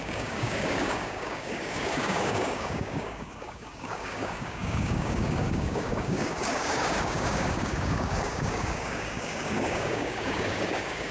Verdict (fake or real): fake